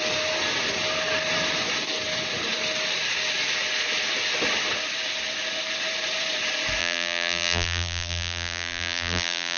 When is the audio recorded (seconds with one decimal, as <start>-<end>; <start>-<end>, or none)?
0.0-6.8